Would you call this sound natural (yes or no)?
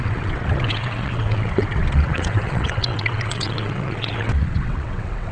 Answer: no